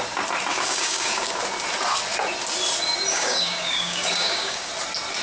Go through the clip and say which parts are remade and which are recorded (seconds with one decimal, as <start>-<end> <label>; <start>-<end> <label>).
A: 0.0-0.5 recorded; 0.5-1.4 remade; 1.4-3.1 recorded; 3.1-4.7 remade; 4.7-5.2 recorded